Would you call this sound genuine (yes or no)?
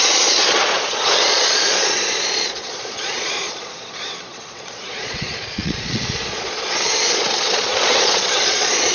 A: no